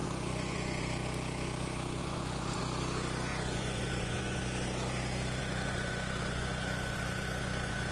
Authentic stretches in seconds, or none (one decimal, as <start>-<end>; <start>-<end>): 0.8-2.0; 2.6-3.3; 4.4-5.4